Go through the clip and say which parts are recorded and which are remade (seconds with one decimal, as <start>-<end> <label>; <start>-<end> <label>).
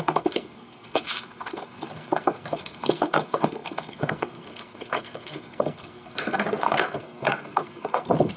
0.0-8.4 remade